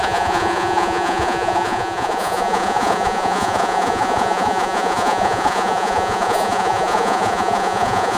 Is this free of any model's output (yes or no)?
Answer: no